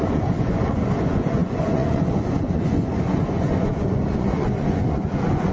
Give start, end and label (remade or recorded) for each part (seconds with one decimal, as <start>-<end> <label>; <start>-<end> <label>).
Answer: 0.0-5.5 remade